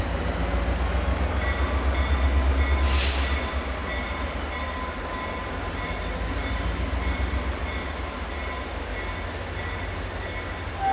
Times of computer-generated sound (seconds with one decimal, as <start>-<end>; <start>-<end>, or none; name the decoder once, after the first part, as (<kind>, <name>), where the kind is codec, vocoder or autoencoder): none